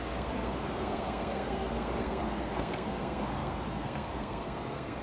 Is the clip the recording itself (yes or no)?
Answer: no